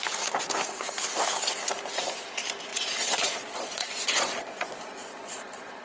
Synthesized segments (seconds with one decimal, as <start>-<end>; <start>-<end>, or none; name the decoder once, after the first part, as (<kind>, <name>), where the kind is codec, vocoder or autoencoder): 2.7-5.8 (vocoder, Vocos)